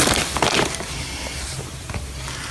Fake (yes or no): no